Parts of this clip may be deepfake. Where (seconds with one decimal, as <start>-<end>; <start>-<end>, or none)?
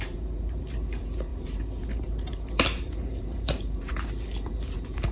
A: 0.0-5.1